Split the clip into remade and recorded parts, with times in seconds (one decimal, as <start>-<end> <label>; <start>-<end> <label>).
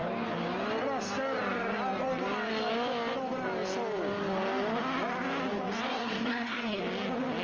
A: 0.0-5.9 recorded; 5.9-6.8 remade; 6.8-7.4 recorded